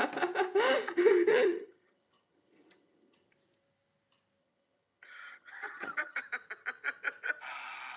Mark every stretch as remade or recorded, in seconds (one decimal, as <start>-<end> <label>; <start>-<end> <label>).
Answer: 0.0-1.3 recorded; 1.3-3.3 remade; 3.3-4.4 recorded; 4.4-6.2 remade; 6.2-8.0 recorded